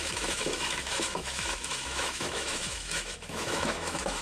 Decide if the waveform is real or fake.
fake